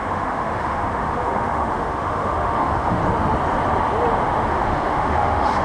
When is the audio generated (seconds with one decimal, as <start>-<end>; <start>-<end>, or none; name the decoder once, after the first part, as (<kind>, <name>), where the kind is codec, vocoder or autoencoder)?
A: 0.0-3.0 (autoencoder, DAC-VAE); 4.5-5.6